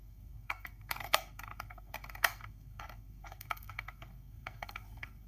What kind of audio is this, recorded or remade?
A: remade